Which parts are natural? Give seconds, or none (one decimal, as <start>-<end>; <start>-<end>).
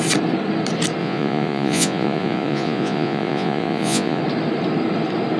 0.0-1.0; 4.2-5.4